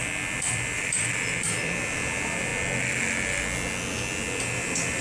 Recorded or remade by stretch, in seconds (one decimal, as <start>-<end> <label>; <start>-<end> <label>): 0.0-2.5 remade; 2.5-4.4 recorded; 4.4-5.0 remade